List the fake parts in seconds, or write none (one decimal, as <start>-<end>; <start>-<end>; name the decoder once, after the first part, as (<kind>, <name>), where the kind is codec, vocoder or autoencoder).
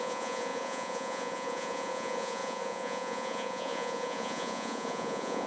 0.0-5.5 (vocoder, Vocos)